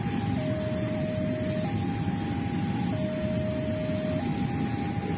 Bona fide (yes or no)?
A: yes